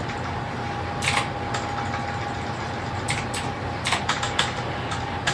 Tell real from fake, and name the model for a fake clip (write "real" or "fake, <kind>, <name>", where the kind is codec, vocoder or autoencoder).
real